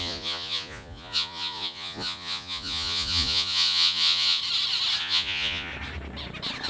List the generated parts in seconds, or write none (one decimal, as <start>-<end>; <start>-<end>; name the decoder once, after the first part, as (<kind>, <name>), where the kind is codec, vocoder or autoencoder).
0.0-4.4 (vocoder, Vocos); 5.0-5.7